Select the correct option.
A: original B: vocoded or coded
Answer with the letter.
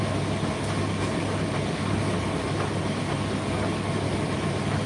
A